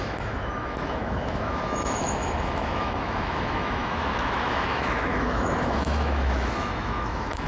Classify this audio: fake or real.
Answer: fake